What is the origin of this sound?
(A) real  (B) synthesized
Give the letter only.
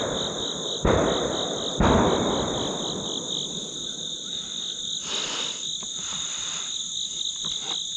A